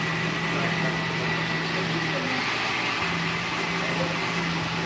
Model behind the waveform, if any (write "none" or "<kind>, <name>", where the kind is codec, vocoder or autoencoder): none